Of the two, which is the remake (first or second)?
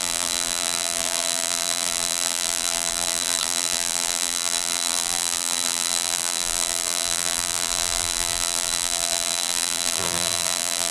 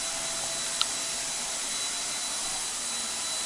first